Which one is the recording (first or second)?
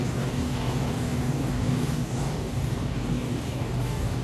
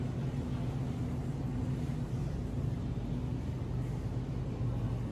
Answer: second